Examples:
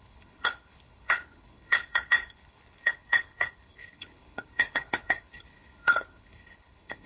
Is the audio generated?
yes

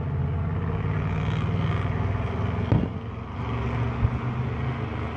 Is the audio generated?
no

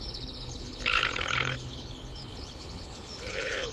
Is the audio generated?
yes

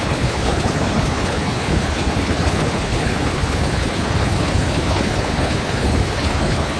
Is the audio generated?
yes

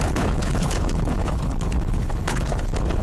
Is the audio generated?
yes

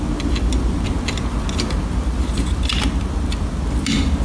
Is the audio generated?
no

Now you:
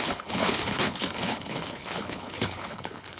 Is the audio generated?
yes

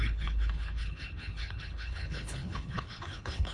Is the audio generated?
yes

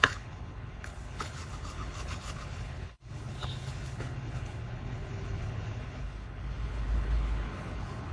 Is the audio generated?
yes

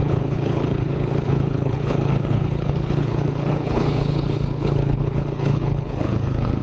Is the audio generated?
yes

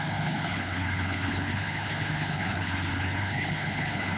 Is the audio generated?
yes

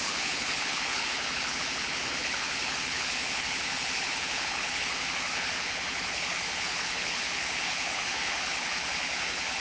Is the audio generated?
yes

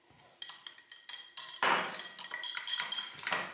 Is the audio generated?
no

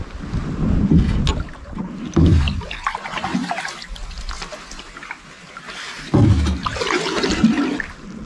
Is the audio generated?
no